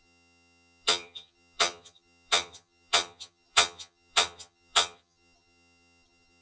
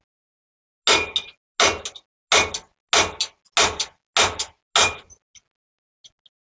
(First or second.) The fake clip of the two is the first